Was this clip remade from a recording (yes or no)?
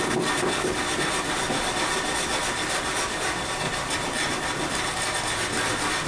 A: no